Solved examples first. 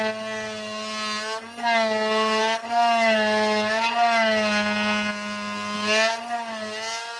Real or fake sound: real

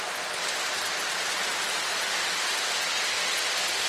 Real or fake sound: real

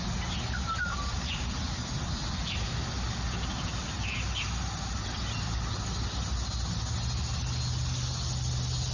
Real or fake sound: real